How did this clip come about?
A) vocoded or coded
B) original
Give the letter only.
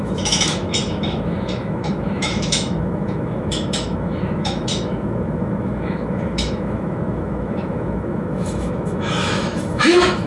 A